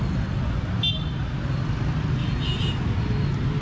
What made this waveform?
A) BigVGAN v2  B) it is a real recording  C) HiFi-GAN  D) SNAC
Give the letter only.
B